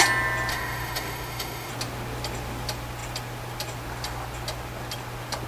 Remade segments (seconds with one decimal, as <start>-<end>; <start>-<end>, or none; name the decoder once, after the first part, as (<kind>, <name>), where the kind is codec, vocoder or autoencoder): 0.5-1.7 (autoencoder, DAC-VAE)